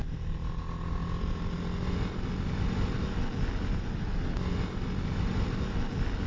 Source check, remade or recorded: recorded